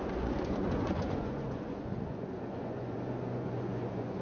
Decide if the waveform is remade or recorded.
remade